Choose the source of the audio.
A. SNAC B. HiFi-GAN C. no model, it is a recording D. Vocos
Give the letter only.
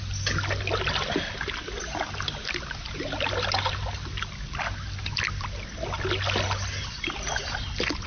C